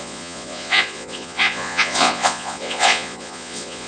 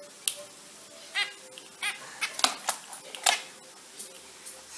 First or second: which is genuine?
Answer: second